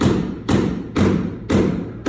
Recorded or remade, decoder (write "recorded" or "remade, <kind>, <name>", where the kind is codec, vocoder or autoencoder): recorded